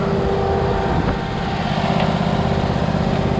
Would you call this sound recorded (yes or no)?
yes